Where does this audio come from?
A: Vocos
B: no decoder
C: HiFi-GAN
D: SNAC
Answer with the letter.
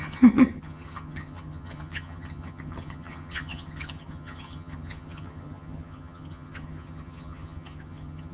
C